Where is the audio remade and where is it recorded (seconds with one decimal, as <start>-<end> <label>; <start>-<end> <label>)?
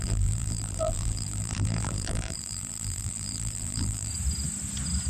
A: 0.0-4.1 remade; 4.1-5.1 recorded